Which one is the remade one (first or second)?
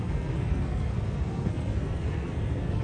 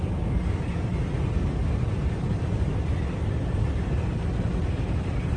first